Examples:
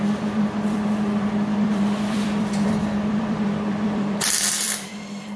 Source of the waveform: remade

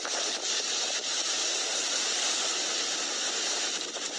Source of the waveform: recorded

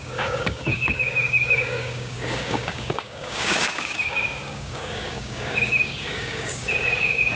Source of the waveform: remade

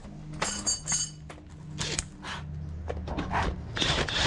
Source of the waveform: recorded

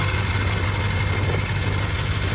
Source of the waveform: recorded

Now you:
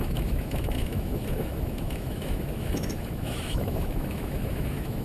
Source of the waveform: remade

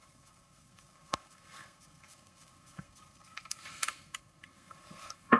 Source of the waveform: remade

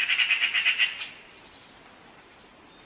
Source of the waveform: recorded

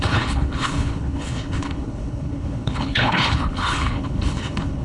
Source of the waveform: remade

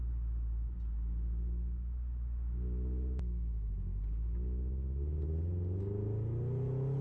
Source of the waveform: recorded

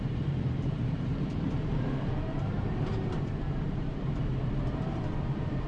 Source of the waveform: remade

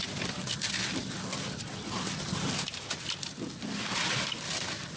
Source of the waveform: remade